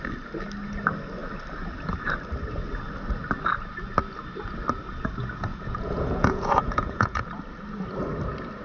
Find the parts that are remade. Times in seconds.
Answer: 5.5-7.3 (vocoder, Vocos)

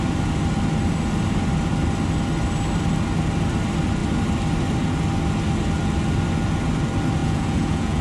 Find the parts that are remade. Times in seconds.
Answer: 7.2-8.0 (vocoder, Vocos)

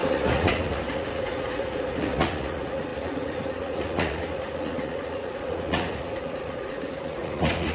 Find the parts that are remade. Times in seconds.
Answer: 0.0-7.7 (vocoder, Vocos)

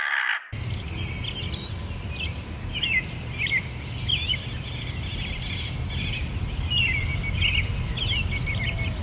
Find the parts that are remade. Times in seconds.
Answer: none

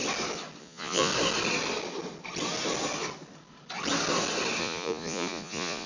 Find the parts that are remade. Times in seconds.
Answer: 0.6-1.1 (vocoder, Vocos); 4.6-5.9

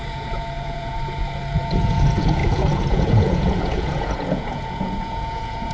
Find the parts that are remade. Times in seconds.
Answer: 0.0-5.7 (vocoder, Vocos)

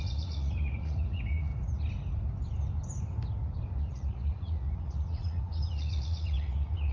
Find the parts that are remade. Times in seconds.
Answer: 0.0-1.5 (vocoder, Vocos); 3.8-6.9

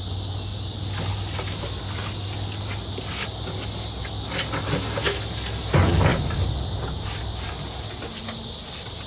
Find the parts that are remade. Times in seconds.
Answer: none